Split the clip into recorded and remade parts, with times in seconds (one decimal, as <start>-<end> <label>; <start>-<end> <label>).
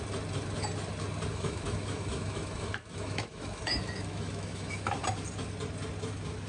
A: 0.0-1.3 recorded; 1.3-5.0 remade; 5.0-6.5 recorded